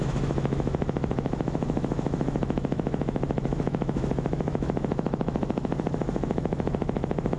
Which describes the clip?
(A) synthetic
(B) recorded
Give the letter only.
A